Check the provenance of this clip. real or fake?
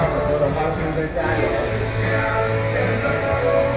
real